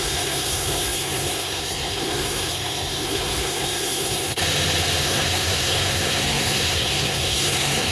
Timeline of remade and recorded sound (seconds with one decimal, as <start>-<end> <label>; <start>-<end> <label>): 0.0-4.4 remade; 4.4-5.0 recorded; 5.0-7.9 remade